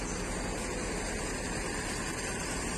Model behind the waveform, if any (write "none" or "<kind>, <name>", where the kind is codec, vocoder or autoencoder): none